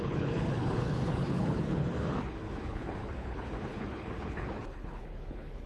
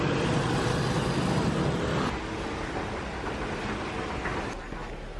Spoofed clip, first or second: first